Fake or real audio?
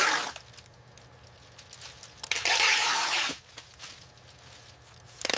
real